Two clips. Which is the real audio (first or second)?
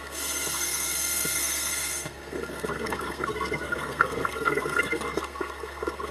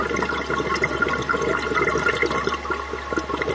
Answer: second